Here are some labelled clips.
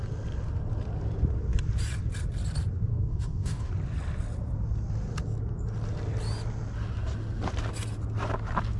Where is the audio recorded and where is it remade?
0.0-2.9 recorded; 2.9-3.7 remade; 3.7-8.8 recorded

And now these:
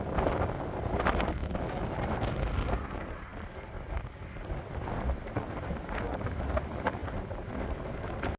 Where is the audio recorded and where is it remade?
0.0-8.4 recorded

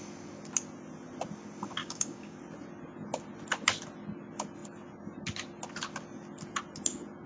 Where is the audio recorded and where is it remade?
0.0-1.8 recorded; 1.8-2.4 remade; 2.4-7.3 recorded